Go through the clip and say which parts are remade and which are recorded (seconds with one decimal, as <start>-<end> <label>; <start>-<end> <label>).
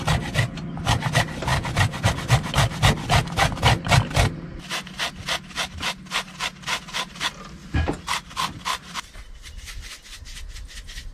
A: 0.0-11.1 recorded